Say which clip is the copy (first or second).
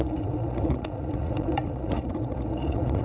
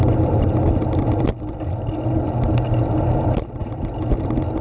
first